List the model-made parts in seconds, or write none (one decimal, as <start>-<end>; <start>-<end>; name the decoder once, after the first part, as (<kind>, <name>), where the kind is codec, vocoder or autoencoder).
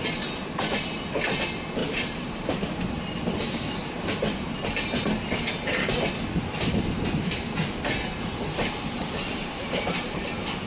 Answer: 1.8-2.7 (vocoder, BigVGAN v2); 8.6-10.2